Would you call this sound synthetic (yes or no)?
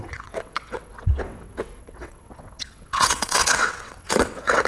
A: yes